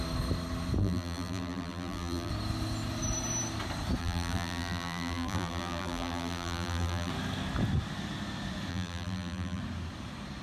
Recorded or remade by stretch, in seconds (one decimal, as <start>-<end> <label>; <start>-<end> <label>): 0.0-0.8 recorded; 0.8-2.3 remade; 2.3-4.0 recorded; 4.0-7.1 remade; 7.1-8.7 recorded; 8.7-9.6 remade; 9.6-10.4 recorded